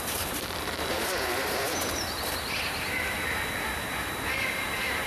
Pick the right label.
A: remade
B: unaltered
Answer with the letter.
A